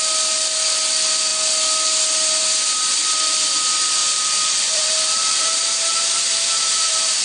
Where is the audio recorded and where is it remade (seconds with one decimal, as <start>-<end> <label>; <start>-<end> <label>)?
0.0-4.0 recorded; 4.0-7.2 remade

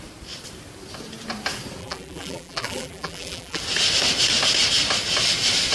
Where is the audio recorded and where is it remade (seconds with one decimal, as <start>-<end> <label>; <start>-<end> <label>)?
0.0-1.8 recorded; 1.8-3.6 remade; 3.6-5.7 recorded

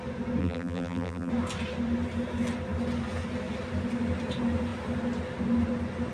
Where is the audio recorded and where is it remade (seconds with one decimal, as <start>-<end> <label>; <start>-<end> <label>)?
0.0-0.4 recorded; 0.4-1.3 remade; 1.3-6.1 recorded